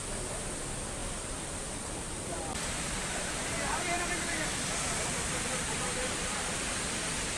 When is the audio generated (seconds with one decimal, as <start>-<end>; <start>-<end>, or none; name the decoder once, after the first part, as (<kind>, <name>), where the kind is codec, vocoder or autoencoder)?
1.0-4.0 (vocoder, BigVGAN v2); 4.9-6.8